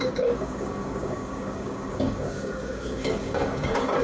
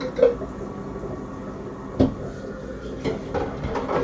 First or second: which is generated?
first